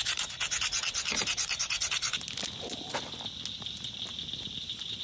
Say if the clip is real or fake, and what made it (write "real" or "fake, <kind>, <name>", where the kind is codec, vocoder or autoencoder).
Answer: real